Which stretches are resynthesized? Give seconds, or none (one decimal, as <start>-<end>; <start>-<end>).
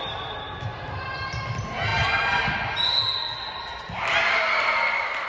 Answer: none